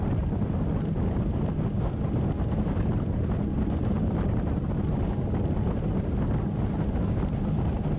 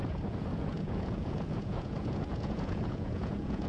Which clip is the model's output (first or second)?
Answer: second